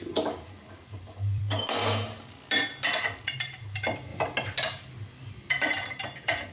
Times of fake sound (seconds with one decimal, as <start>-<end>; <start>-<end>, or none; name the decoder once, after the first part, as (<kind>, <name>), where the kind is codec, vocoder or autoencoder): 0.0-1.4 (vocoder, BigVGAN v2); 3.2-4.1; 5.5-6.5